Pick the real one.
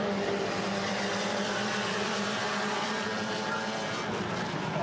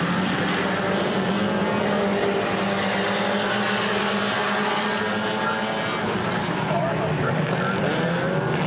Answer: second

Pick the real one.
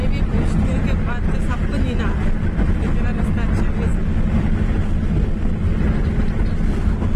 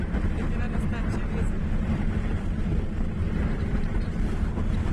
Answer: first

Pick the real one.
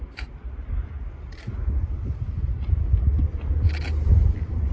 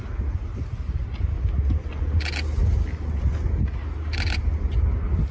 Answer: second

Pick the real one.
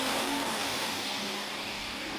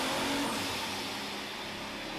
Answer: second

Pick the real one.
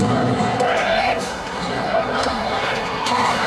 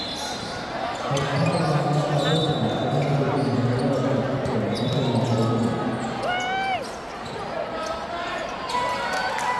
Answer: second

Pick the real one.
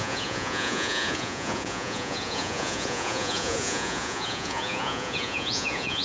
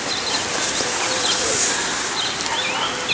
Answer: second